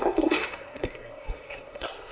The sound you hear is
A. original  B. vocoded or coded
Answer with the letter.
B